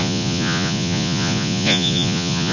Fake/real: fake